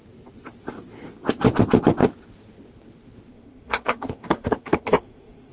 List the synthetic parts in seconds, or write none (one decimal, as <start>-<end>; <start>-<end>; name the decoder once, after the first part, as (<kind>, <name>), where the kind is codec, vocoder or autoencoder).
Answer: 3.3-5.5 (codec, SNAC)